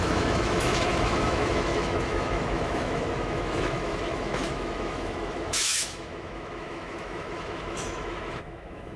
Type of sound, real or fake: fake